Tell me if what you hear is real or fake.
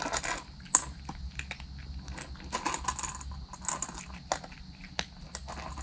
real